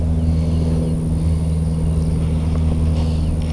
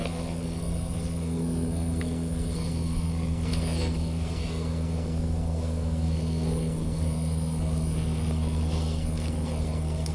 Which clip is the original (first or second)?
first